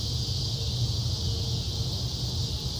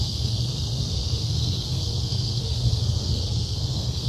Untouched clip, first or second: first